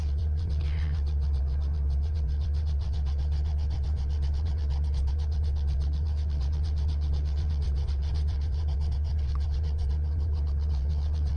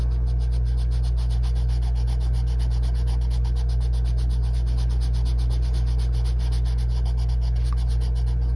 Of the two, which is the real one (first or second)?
second